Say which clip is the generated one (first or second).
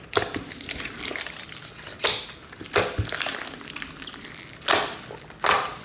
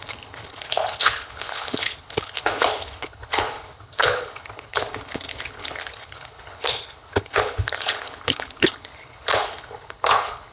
second